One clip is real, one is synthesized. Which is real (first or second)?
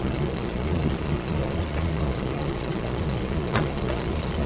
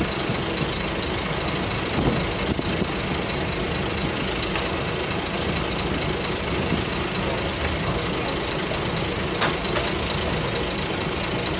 second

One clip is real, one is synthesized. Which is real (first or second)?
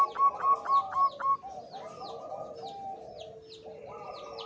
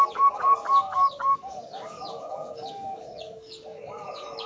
first